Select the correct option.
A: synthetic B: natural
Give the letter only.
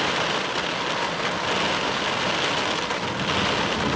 B